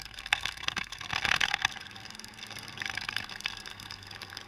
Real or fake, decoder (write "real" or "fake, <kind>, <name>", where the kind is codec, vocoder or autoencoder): fake, codec, SNAC